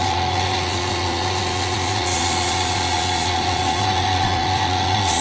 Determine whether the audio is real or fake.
fake